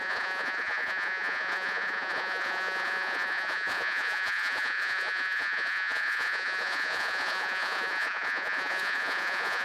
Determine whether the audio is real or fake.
fake